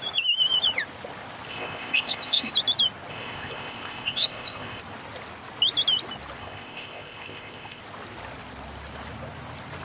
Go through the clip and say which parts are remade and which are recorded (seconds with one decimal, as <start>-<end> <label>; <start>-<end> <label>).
0.0-1.5 recorded; 1.5-2.5 remade; 2.5-3.1 recorded; 3.1-4.8 remade; 4.8-6.4 recorded; 6.4-7.8 remade; 7.8-9.8 recorded